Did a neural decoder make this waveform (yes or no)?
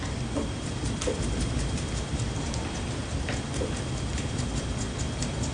no